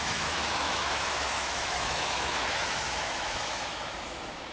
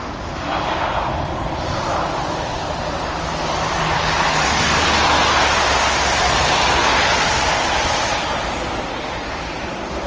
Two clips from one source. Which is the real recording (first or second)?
second